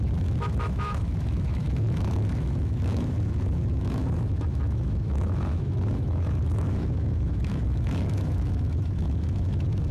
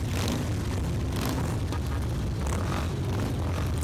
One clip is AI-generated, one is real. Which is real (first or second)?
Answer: second